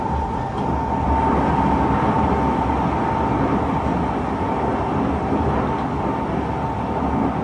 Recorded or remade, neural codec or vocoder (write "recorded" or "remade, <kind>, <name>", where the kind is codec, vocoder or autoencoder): recorded